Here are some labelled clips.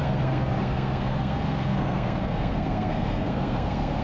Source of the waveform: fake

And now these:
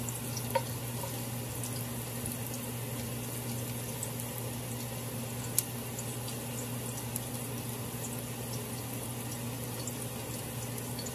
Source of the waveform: real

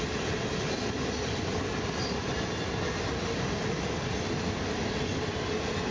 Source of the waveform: real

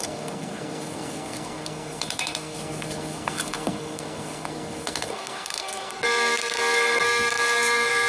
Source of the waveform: fake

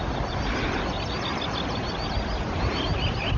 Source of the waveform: real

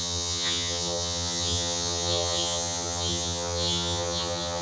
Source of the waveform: fake